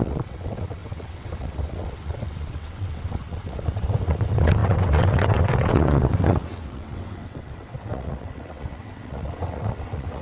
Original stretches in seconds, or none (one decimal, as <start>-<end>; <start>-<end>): none